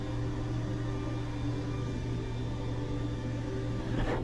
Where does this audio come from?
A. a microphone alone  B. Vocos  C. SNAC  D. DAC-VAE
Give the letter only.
A